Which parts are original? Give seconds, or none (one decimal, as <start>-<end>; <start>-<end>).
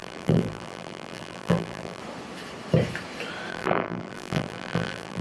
2.0-3.5